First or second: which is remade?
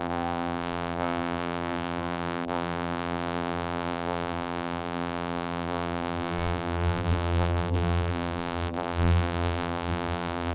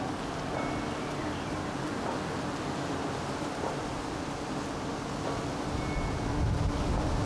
first